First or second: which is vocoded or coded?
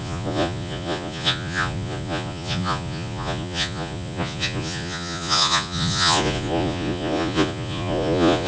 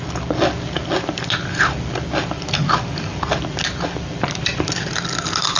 first